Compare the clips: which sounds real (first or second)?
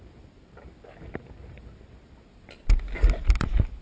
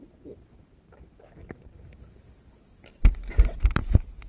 first